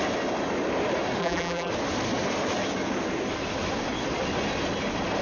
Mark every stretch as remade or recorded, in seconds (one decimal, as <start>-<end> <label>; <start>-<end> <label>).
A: 0.0-1.2 recorded; 1.2-1.7 remade; 1.7-5.2 recorded